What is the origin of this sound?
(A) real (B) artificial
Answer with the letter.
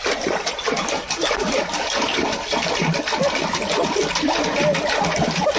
A